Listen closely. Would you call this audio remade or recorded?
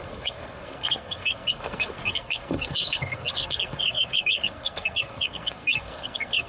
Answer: remade